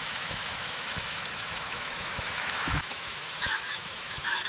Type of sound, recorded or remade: remade